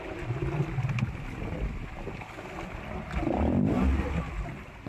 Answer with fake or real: real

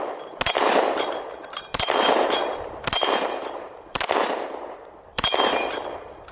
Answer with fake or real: fake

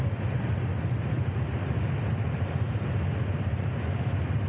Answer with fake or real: real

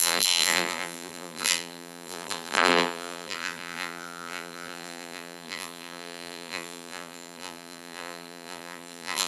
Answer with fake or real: fake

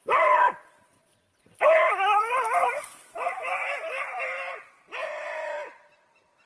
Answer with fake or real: fake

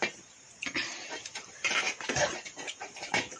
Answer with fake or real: fake